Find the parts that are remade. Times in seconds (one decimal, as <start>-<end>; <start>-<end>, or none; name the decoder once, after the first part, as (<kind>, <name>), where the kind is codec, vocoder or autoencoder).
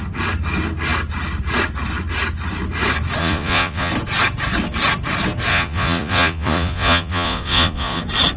3.2-3.9 (vocoder, Vocos); 5.5-8.0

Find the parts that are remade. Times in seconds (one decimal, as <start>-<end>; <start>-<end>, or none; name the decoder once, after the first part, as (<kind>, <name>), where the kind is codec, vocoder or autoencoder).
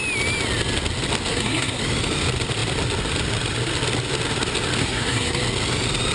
1.3-1.8 (codec, SNAC); 4.8-5.4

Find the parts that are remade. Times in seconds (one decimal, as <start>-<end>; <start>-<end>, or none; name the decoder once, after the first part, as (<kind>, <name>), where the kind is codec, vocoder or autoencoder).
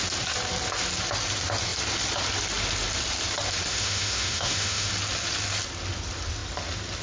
3.7-4.9 (autoencoder, DAC-VAE)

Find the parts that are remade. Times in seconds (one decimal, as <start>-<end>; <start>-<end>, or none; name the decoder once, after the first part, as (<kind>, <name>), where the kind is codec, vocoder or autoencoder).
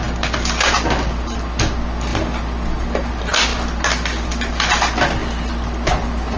none